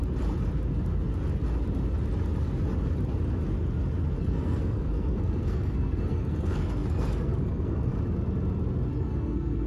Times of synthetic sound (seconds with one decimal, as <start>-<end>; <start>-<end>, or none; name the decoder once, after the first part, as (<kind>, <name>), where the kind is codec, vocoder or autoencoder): 4.2-7.9 (codec, SNAC); 8.9-9.7

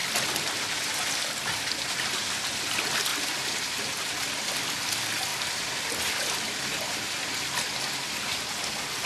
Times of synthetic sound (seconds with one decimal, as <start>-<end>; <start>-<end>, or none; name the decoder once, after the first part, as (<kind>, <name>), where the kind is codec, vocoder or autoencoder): none

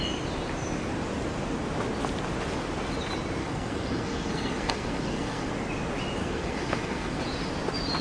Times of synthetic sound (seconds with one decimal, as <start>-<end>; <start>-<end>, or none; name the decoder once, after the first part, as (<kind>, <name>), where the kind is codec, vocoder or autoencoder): 3.4-5.5 (codec, SNAC); 6.2-7.2

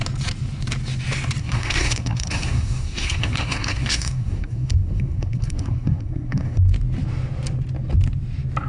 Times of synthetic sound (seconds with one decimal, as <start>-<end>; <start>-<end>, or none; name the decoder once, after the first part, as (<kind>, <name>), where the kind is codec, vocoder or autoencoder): 1.4-6.6 (codec, SNAC)

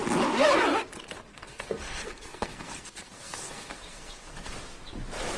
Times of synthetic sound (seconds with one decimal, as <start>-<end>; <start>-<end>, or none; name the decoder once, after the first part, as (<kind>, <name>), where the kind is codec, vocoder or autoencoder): 1.3-4.5 (codec, SNAC)